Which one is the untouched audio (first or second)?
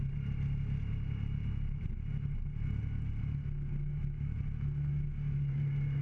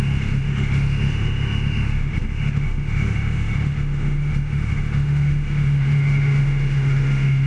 first